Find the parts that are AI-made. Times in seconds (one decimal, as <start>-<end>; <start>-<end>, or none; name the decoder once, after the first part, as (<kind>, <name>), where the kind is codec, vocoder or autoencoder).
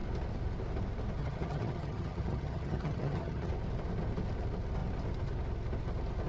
1.2-3.5 (vocoder, HiFi-GAN)